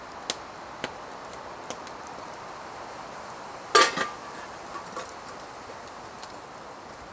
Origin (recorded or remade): recorded